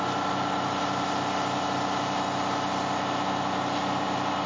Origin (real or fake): real